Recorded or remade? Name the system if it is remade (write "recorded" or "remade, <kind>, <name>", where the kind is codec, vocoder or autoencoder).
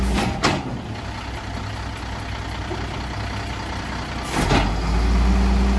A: recorded